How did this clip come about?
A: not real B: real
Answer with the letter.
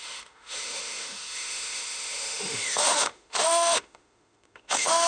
A